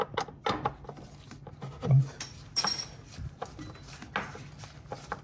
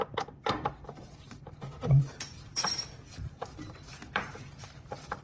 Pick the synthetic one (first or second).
second